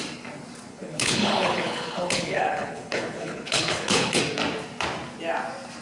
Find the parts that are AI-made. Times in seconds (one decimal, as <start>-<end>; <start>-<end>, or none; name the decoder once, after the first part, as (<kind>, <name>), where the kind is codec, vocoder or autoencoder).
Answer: 0.7-4.2 (codec, HILCodec)